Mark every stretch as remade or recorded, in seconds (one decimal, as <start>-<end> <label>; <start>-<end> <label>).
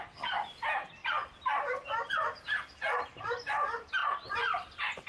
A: 0.0-1.0 recorded; 1.0-2.1 remade; 2.1-5.1 recorded